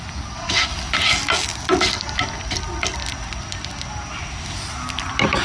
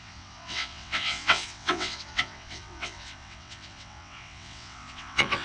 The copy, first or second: second